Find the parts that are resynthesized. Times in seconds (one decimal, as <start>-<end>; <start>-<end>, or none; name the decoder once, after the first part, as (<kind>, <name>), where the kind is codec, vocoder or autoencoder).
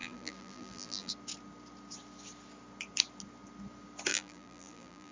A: 0.0-1.1 (vocoder, BigVGAN v2); 4.1-5.1